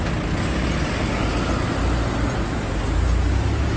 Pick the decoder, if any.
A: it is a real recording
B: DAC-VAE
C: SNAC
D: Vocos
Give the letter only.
A